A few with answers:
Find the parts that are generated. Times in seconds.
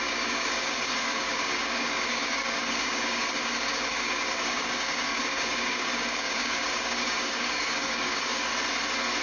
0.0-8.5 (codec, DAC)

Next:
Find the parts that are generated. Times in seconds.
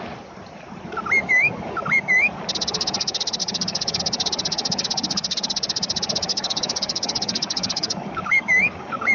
1.2-2.4 (codec, DAC); 3.4-4.0; 6.3-9.1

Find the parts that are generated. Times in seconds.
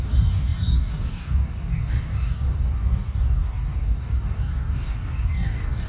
0.0-5.9 (codec, DAC)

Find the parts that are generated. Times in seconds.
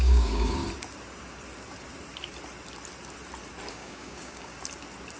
0.0-0.6 (codec, DAC); 3.7-4.5